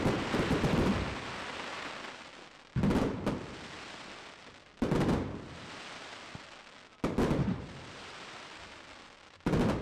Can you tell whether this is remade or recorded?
recorded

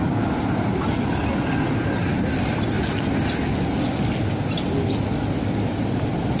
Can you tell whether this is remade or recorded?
recorded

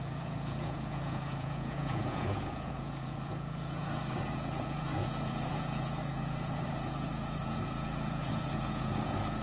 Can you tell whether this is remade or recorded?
remade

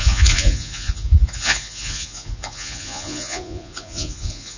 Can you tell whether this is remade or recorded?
remade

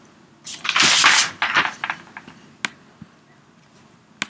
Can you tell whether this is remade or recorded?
recorded